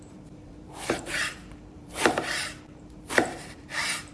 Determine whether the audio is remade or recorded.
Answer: remade